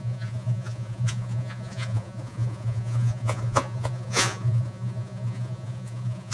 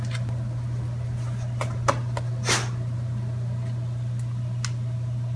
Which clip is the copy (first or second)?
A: first